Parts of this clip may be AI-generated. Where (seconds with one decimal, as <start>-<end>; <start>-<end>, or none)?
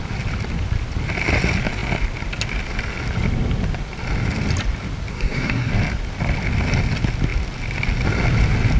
5.1-5.7